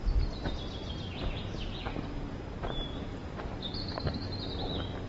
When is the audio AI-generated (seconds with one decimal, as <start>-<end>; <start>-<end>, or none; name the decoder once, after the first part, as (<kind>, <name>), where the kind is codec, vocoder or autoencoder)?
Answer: 0.8-1.4 (vocoder, BigVGAN v2); 3.1-4.4